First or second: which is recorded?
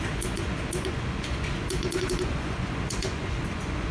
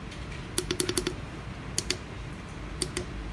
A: second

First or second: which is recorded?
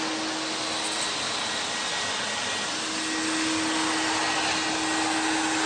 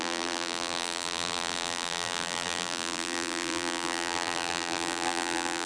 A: first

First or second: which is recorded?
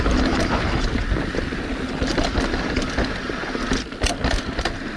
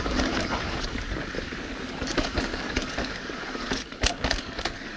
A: first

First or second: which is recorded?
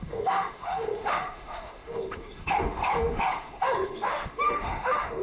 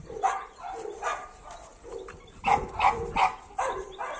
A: second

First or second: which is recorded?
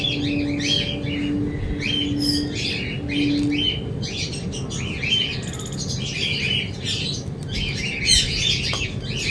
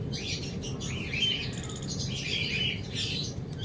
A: first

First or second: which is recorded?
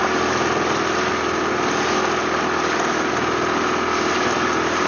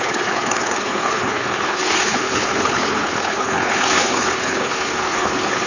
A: first